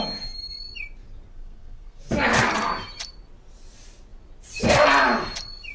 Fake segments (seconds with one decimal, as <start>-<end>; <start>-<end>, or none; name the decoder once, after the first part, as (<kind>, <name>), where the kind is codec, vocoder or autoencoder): 1.3-2.0 (codec, SNAC)

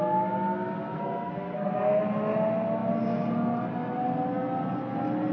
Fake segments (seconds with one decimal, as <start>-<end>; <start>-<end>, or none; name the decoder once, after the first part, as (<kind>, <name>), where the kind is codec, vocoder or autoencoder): 0.9-2.0 (codec, SNAC)

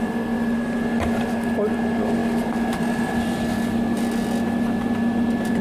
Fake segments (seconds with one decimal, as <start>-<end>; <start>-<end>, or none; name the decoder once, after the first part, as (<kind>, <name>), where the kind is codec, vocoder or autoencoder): none

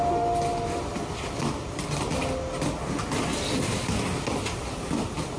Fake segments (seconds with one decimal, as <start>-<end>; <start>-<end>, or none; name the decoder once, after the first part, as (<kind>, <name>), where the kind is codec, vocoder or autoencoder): none

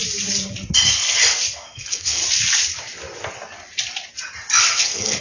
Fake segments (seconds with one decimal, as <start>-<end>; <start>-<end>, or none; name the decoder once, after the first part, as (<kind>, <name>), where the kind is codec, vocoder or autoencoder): 1.5-2.2 (codec, SNAC); 4.7-5.2